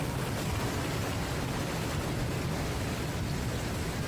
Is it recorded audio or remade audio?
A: recorded